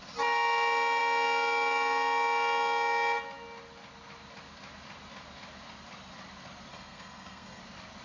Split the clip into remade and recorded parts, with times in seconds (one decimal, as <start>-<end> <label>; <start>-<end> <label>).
0.0-6.7 recorded; 6.7-7.6 remade; 7.6-8.0 recorded